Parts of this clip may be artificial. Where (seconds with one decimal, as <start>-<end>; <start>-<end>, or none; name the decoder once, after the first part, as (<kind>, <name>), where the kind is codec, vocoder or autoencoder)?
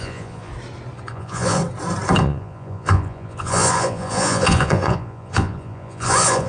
0.0-0.5 (vocoder, Vocos); 1.1-1.6; 2.2-6.5